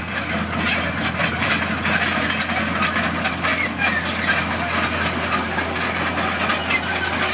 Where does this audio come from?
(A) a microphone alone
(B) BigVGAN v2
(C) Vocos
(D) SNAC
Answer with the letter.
A